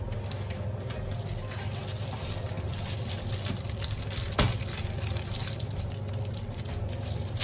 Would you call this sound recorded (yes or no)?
yes